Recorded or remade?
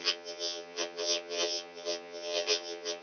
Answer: remade